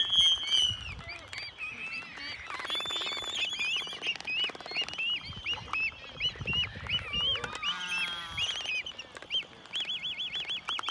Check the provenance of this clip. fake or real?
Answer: real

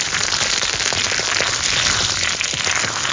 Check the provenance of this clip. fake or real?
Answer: real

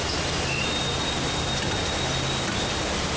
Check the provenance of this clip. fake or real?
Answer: real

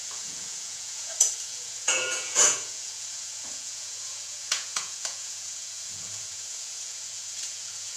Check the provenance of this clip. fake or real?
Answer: fake